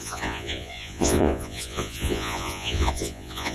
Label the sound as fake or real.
fake